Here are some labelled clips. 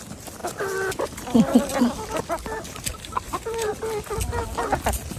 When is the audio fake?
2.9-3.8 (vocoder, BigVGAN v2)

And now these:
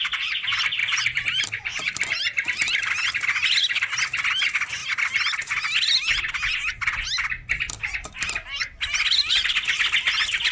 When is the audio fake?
0.8-2.9 (vocoder, BigVGAN v2)

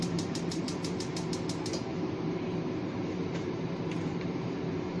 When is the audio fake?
0.0-1.0 (vocoder, BigVGAN v2); 1.9-5.0

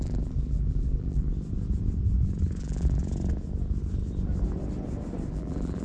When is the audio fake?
0.0-1.3 (vocoder, BigVGAN v2); 2.6-3.0; 5.3-5.8

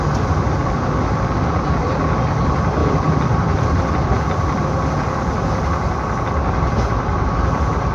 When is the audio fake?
0.6-1.6 (vocoder, BigVGAN v2); 2.8-4.6

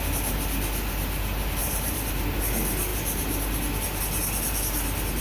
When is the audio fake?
1.6-2.1 (vocoder, BigVGAN v2)

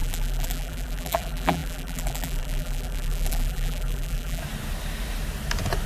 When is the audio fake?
0.0-4.4 (vocoder, BigVGAN v2)